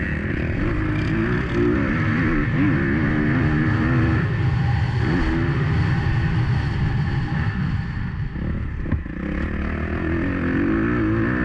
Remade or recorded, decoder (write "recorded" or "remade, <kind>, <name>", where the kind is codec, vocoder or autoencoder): recorded